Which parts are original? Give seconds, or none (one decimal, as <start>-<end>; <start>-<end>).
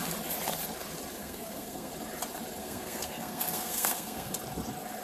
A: 0.0-1.2; 1.9-2.6; 4.3-5.0